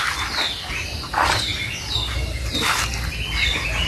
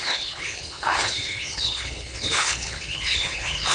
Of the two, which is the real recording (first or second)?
first